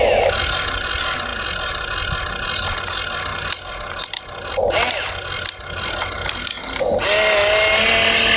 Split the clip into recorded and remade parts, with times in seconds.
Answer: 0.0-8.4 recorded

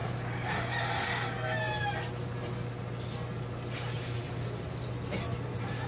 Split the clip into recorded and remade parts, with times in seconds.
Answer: 0.0-5.9 recorded

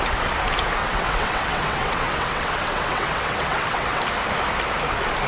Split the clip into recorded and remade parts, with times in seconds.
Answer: 0.0-0.8 recorded; 0.8-4.0 remade; 4.0-5.3 recorded

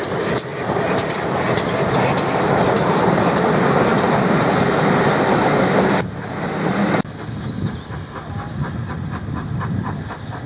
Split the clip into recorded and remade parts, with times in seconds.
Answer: 0.0-10.5 recorded

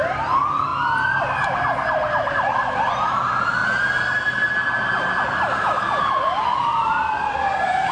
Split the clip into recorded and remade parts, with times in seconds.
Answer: 0.0-0.7 remade; 0.7-3.1 recorded; 3.1-3.6 remade; 3.6-6.0 recorded; 6.0-7.9 remade